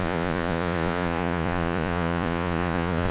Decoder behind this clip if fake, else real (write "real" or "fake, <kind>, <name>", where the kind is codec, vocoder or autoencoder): fake, vocoder, Vocos